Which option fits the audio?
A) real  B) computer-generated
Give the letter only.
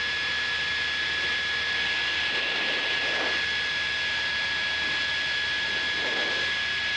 A